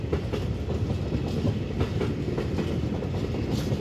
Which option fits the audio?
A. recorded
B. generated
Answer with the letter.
A